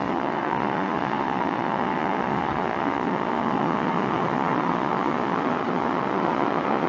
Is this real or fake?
fake